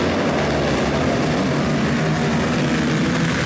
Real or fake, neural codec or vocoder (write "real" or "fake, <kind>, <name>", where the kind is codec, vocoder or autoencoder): real